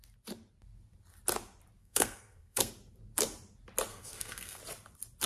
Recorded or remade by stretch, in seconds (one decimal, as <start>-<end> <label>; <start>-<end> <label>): 0.0-1.8 recorded; 1.8-2.7 remade; 2.7-3.9 recorded; 3.9-4.6 remade; 4.6-5.3 recorded